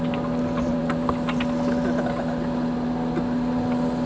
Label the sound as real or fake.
real